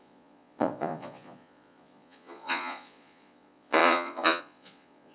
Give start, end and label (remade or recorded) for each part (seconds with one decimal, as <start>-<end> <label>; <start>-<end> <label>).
0.0-5.1 remade

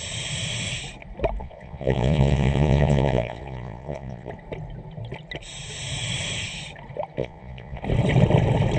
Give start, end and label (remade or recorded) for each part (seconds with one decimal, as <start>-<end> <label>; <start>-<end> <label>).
0.0-1.4 recorded; 1.4-4.3 remade; 4.3-7.2 recorded; 7.2-7.8 remade; 7.8-8.8 recorded

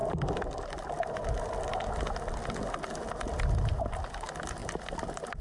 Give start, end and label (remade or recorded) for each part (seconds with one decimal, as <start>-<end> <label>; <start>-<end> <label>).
0.0-5.4 recorded

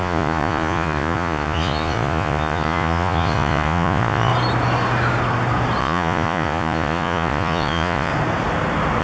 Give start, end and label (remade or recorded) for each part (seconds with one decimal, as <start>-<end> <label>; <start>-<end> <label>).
0.0-4.3 remade; 4.3-5.8 recorded; 5.8-8.1 remade; 8.1-9.0 recorded

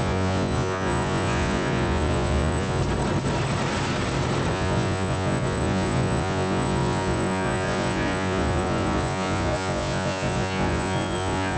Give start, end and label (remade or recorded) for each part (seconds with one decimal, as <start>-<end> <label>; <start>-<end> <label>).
0.0-2.8 remade; 2.8-4.5 recorded; 4.5-11.6 remade